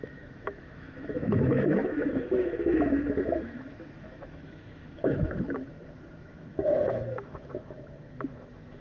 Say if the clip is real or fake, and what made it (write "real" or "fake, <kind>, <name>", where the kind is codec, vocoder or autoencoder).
fake, autoencoder, DAC-VAE